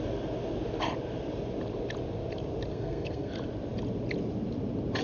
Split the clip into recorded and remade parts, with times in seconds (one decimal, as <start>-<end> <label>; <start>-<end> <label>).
0.0-2.7 recorded; 2.7-3.3 remade; 3.3-5.0 recorded